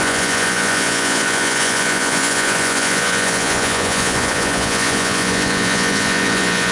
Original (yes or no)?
no